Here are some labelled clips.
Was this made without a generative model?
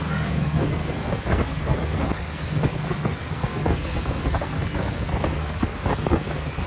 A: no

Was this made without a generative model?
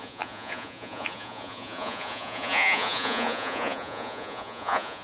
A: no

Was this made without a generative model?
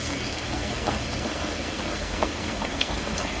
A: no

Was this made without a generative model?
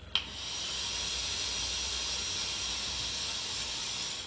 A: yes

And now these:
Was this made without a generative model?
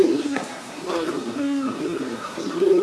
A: no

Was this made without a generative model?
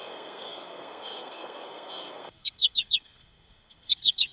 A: no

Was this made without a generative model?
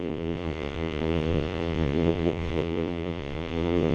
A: no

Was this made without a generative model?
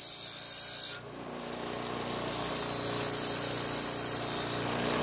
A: yes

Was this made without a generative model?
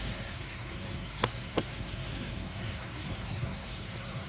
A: no